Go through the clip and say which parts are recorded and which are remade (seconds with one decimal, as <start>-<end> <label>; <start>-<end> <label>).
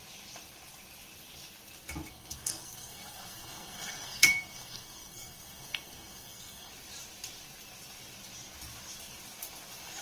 0.0-2.1 recorded; 2.1-6.7 remade; 6.7-10.0 recorded